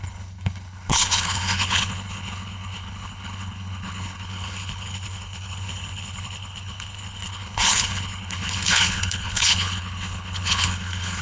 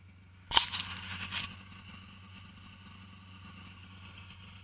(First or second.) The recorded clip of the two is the second